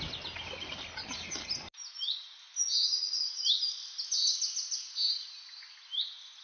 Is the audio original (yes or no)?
yes